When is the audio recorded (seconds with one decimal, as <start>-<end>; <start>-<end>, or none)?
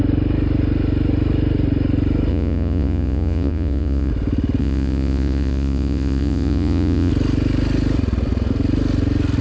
0.0-2.3; 4.1-4.6; 7.1-9.4